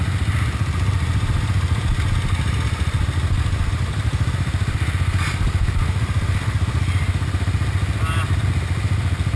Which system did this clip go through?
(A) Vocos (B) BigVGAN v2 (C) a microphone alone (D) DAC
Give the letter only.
C